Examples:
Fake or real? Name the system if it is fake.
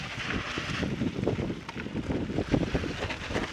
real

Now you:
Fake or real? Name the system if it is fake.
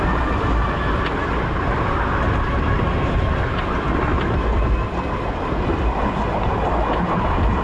real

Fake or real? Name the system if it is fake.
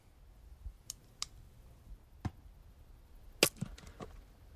real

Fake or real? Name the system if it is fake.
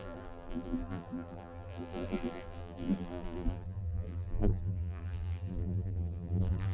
fake, vocoder, BigVGAN v2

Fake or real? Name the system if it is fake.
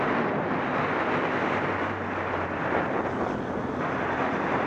real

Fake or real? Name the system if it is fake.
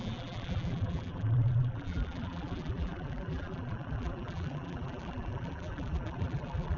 fake, vocoder, BigVGAN v2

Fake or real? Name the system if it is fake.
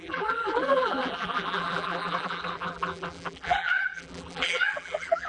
fake, vocoder, BigVGAN v2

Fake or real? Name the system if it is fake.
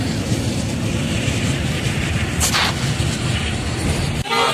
fake, vocoder, BigVGAN v2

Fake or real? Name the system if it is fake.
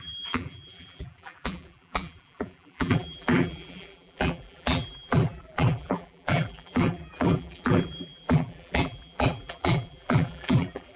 fake, vocoder, BigVGAN v2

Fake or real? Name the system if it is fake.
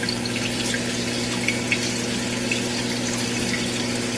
real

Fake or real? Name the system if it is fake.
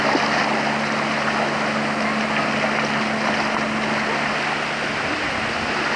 real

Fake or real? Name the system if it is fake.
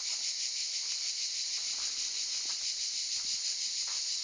fake, vocoder, BigVGAN v2